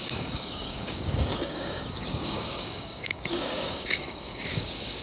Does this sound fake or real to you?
fake